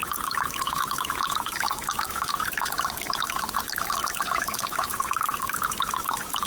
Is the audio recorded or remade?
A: remade